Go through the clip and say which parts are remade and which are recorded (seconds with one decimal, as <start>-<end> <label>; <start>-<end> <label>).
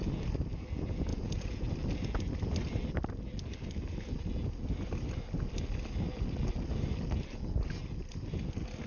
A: 0.0-1.1 recorded; 1.1-1.7 remade; 1.7-8.9 recorded